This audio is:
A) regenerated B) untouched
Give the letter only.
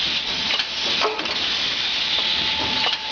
B